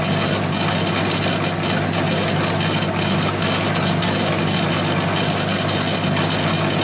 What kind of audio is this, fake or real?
real